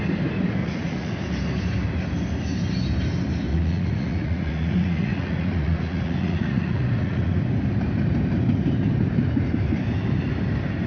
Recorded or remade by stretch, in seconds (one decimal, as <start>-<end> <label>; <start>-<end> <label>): 0.0-0.6 recorded; 0.6-1.1 remade; 1.1-3.5 recorded; 3.5-7.4 remade; 7.4-10.9 recorded